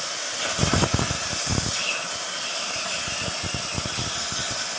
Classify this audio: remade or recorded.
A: recorded